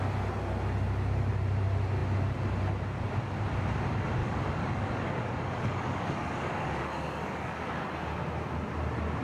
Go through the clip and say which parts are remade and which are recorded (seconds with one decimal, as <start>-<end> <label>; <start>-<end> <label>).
0.0-4.2 recorded; 4.2-7.9 remade; 7.9-9.2 recorded